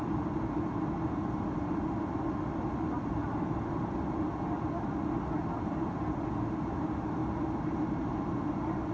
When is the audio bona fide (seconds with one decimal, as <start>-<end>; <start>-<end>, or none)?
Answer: 0.0-3.2; 3.8-8.9